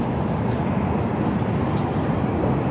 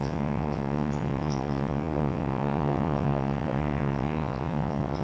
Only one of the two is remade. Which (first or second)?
second